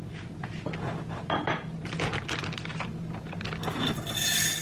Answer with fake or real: real